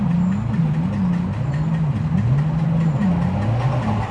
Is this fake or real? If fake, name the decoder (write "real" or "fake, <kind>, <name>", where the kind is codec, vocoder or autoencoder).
real